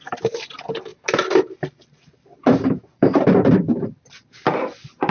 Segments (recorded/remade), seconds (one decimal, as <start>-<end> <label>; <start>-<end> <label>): 0.0-5.1 recorded